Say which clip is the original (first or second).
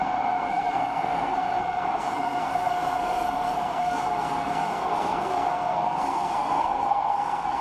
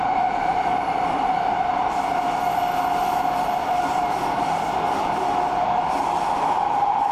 second